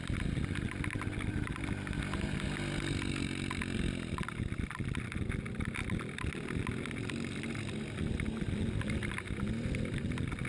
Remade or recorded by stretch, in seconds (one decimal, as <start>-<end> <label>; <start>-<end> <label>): 0.0-10.5 recorded